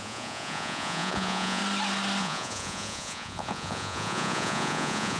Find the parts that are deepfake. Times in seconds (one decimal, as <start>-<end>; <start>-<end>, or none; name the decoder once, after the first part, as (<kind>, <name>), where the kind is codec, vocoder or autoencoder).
0.0-1.6 (vocoder, Vocos); 2.2-5.2